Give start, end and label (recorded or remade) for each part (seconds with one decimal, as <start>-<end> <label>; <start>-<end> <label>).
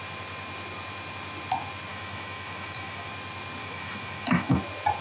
0.0-1.9 recorded; 1.9-3.1 remade; 3.1-3.6 recorded; 3.6-4.6 remade; 4.6-5.0 recorded